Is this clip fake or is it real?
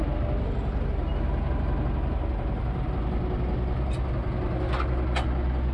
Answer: real